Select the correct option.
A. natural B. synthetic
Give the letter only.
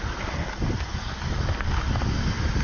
A